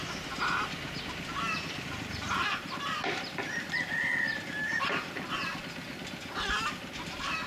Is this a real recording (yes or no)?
yes